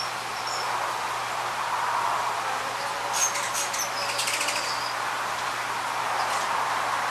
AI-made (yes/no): no